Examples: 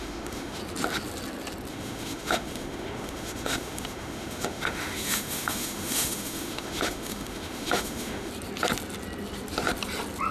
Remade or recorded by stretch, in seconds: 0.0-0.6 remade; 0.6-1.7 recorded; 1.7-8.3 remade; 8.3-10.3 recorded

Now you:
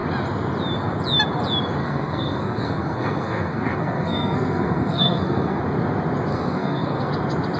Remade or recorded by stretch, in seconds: 0.0-1.8 recorded; 1.8-5.6 remade; 5.6-6.3 recorded; 6.3-7.1 remade; 7.1-7.6 recorded

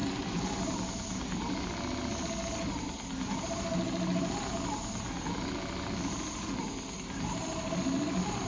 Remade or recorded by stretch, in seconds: 0.0-8.5 recorded

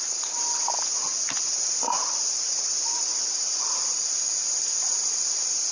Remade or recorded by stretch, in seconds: 0.0-5.7 recorded

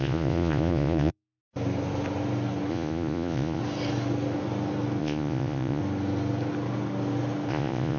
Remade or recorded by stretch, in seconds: 0.0-1.4 remade; 1.4-2.7 recorded; 2.7-3.6 remade; 3.6-5.0 recorded; 5.0-5.8 remade; 5.8-7.5 recorded; 7.5-8.0 remade

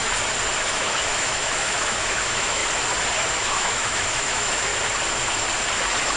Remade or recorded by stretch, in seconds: 0.0-0.7 recorded; 0.7-2.6 remade; 2.6-3.3 recorded; 3.3-4.7 remade; 4.7-6.2 recorded

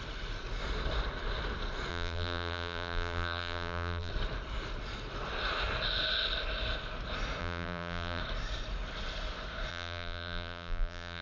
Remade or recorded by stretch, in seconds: 0.0-1.9 recorded; 1.9-4.1 remade; 4.1-7.4 recorded; 7.4-8.2 remade; 8.2-9.7 recorded; 9.7-11.2 remade